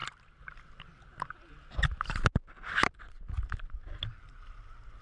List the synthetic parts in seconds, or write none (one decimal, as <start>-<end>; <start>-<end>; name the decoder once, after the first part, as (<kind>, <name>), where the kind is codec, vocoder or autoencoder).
none